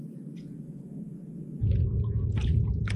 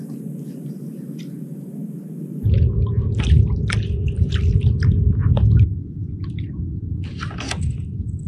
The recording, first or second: second